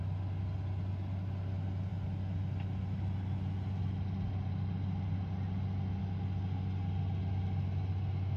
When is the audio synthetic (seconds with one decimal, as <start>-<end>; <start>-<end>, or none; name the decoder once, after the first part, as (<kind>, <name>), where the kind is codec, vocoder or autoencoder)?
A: none